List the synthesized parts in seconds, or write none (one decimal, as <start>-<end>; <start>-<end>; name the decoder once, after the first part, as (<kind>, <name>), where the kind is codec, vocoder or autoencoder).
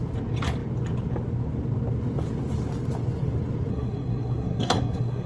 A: 3.7-5.3 (codec, SNAC)